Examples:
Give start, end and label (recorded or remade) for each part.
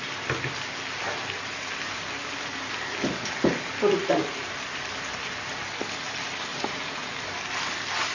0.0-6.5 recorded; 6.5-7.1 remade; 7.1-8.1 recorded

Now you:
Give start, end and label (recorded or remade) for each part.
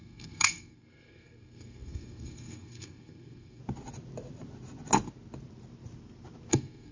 0.0-3.6 remade; 3.6-6.5 recorded; 6.5-6.9 remade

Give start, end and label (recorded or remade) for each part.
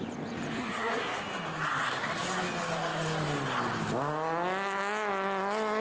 0.0-0.6 recorded; 0.6-1.2 remade; 1.2-5.8 recorded